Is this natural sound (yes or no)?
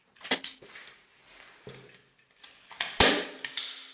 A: yes